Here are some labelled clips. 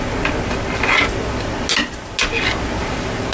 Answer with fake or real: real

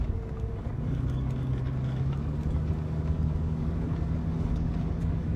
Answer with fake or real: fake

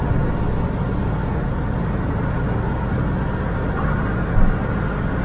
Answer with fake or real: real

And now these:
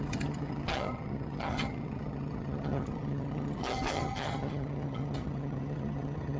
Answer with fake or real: fake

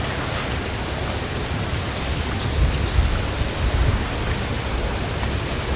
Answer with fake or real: real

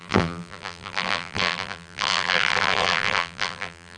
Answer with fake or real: fake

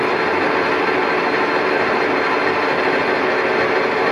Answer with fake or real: real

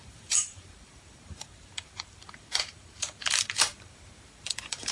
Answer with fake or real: fake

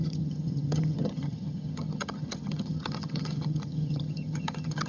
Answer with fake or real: fake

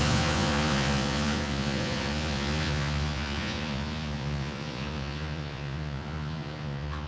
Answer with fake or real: fake